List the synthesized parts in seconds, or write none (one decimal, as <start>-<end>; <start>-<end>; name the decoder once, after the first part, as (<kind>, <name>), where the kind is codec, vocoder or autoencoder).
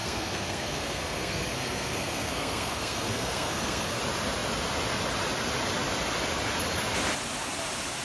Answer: 0.0-4.0 (codec, SNAC)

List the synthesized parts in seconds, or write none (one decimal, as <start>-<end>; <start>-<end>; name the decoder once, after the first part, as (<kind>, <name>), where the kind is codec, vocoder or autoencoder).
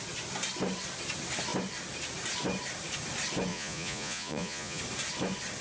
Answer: 3.5-4.8 (vocoder, Vocos)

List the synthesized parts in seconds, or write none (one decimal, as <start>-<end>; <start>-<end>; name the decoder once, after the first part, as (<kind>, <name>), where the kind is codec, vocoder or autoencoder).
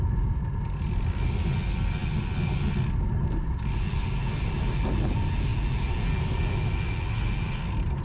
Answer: none